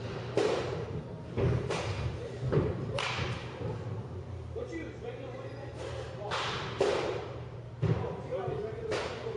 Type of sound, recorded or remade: remade